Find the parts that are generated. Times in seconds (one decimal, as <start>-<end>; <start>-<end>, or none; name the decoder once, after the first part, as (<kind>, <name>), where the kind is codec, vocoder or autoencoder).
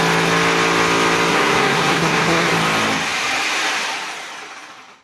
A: 1.3-2.5 (codec, SNAC)